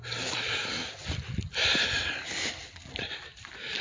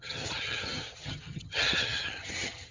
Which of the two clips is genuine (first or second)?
first